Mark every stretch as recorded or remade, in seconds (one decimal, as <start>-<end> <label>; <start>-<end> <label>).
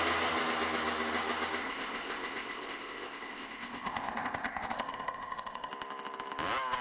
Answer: 0.0-1.6 recorded; 1.6-5.7 remade; 5.7-6.8 recorded